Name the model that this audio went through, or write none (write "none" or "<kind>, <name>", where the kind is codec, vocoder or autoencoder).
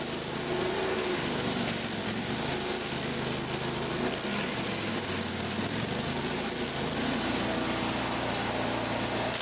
none